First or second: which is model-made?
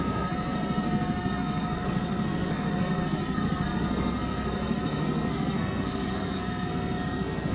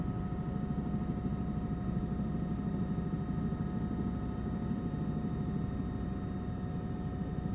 first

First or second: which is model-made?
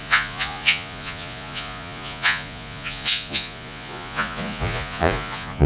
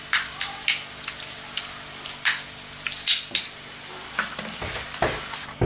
first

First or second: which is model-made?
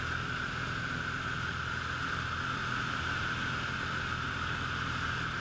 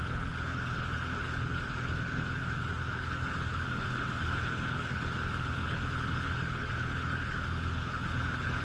second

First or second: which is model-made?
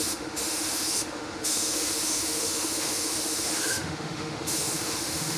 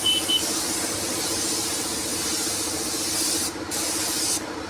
first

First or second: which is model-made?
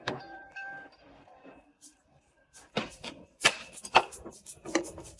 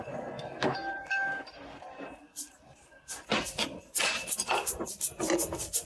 first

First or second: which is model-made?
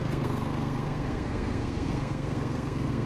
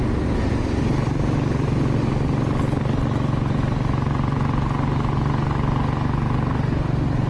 first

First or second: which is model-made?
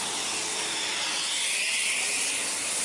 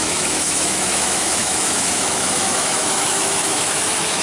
second